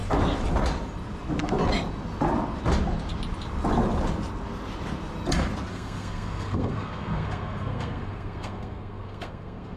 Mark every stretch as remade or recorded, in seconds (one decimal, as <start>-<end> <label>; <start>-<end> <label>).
0.0-5.7 recorded; 5.7-9.8 remade